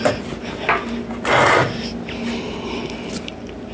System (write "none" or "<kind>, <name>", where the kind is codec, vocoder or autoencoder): none